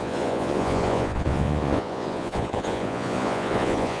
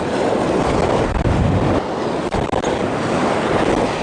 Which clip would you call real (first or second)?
second